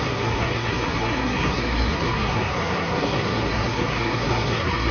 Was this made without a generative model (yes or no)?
no